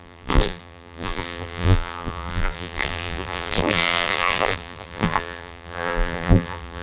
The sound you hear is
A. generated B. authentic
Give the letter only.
A